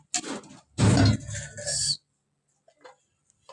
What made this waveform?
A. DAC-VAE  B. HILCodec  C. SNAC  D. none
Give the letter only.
D